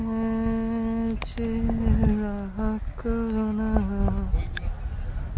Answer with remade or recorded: recorded